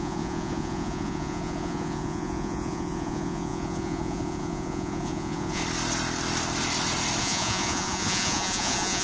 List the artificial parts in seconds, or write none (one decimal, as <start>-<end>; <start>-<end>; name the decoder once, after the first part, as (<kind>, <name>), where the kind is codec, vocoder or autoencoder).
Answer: 0.0-5.6 (vocoder, Vocos); 7.2-9.0

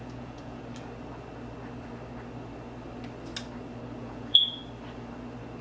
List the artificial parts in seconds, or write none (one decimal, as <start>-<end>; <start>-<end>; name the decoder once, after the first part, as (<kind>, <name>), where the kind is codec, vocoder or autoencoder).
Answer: 0.0-0.6 (vocoder, Vocos); 4.0-4.6